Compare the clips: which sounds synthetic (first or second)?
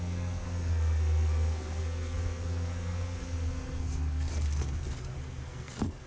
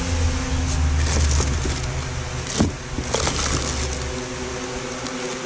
first